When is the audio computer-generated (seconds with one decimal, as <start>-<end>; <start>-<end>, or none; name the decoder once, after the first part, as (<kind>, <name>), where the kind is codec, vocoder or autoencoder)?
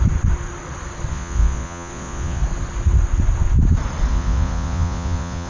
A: 1.1-2.4 (vocoder, Vocos); 4.1-5.5